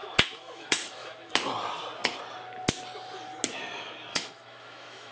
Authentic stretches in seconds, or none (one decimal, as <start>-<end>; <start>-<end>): 1.3-4.1